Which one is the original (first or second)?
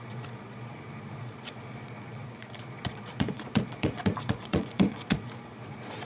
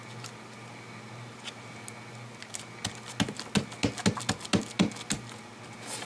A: second